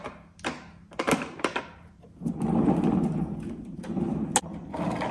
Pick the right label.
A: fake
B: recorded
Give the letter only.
B